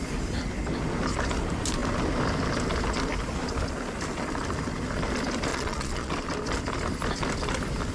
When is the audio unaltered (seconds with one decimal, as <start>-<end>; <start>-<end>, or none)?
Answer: 0.0-5.5; 6.1-7.9